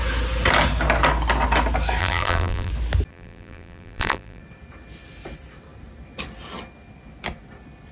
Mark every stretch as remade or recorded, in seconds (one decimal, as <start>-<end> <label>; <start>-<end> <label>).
0.0-2.0 recorded; 2.0-2.7 remade; 2.7-3.1 recorded; 3.1-4.4 remade; 4.4-7.9 recorded